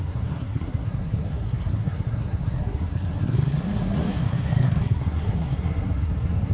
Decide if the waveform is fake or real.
fake